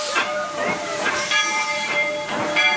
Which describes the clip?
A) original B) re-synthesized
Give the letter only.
B